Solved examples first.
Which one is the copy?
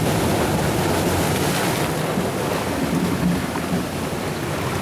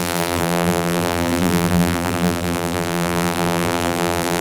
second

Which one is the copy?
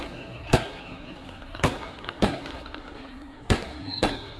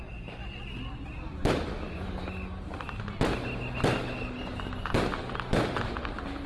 first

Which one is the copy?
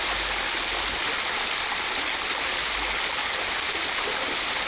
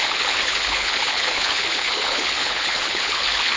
second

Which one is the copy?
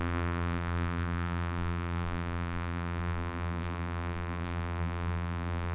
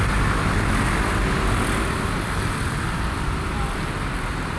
first